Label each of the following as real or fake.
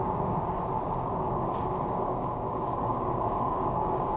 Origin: fake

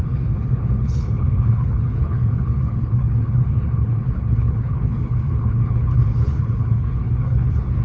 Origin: fake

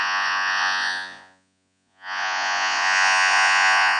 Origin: fake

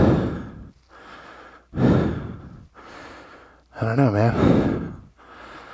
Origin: real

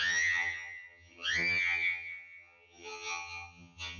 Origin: fake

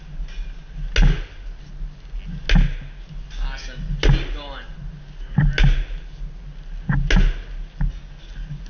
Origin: real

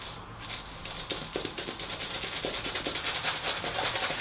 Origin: real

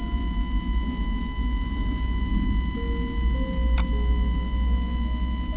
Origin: real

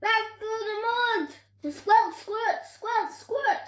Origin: fake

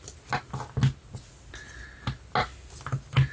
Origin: real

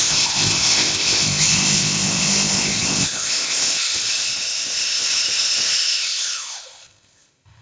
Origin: fake